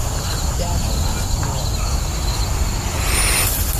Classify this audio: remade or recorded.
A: recorded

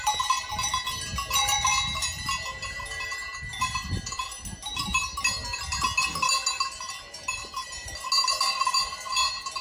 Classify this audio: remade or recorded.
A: recorded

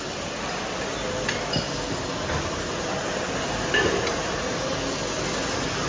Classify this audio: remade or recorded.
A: recorded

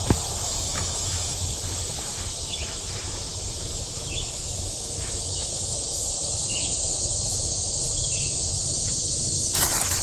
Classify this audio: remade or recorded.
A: remade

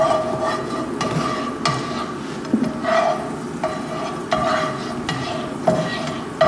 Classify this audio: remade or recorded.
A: recorded